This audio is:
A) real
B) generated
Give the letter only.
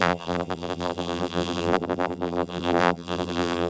B